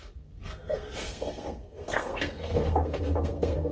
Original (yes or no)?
no